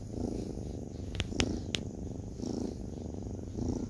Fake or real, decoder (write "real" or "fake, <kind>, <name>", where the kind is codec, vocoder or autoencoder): real